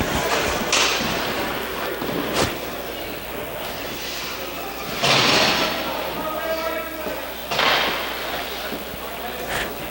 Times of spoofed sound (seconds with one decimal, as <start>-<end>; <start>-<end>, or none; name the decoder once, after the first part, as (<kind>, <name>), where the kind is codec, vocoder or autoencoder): none